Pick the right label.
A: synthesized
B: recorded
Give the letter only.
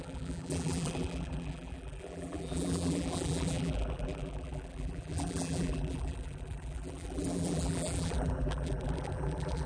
A